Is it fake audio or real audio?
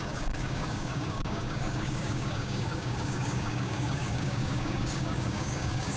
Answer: fake